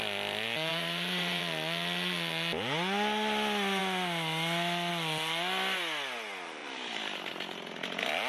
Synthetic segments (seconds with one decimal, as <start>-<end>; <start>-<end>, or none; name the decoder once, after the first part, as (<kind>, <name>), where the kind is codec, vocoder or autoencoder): 0.7-1.4 (vocoder, BigVGAN v2); 6.6-7.3